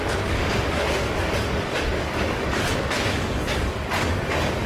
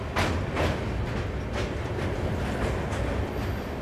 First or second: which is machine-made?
first